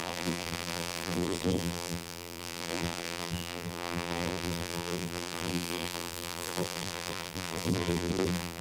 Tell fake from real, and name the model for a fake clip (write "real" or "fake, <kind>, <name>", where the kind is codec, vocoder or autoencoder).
fake, vocoder, BigVGAN v2